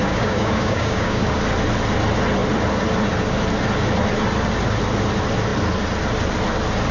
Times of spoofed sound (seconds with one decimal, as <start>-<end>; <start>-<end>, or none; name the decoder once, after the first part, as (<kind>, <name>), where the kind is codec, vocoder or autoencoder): 0.0-1.4 (codec, DAC)